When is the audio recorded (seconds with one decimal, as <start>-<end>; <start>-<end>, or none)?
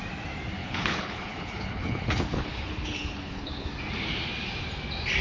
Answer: 0.0-0.6; 3.7-5.2